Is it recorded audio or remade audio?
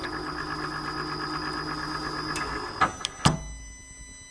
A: recorded